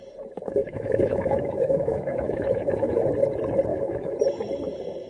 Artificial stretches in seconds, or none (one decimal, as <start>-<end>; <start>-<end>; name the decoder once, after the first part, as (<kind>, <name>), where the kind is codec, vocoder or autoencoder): 0.6-3.1 (autoencoder, DAC-VAE); 3.7-4.2